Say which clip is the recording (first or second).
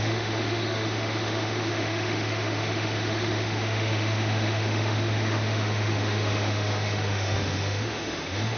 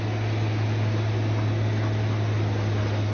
second